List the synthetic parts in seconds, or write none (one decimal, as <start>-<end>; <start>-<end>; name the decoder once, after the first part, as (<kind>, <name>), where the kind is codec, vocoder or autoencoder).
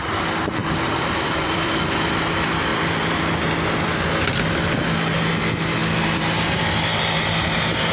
0.6-1.8 (vocoder, BigVGAN v2)